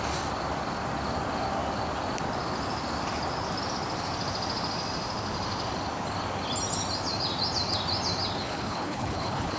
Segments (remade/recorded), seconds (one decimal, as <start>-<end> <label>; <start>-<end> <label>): 0.0-8.4 recorded; 8.4-9.6 remade